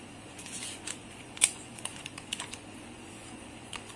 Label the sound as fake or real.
fake